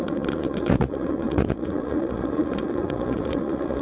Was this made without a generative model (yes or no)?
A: no